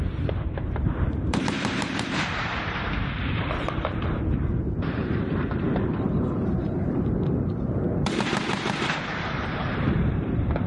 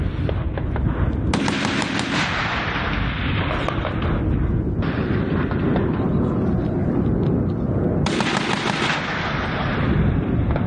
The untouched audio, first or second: second